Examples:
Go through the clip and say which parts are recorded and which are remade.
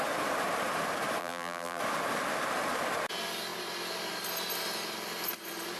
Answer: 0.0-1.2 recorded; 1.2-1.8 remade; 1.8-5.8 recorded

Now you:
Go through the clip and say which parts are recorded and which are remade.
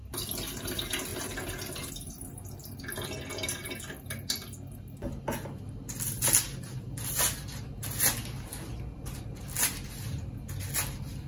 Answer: 0.0-11.3 recorded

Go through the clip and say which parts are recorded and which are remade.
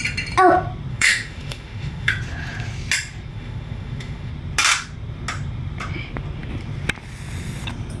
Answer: 0.0-0.9 recorded; 0.9-2.1 remade; 2.1-3.3 recorded; 3.3-4.3 remade; 4.3-8.0 recorded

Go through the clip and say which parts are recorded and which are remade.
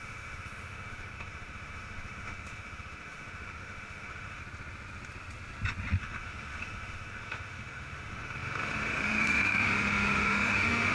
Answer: 0.0-4.4 remade; 4.4-6.0 recorded; 6.0-10.9 remade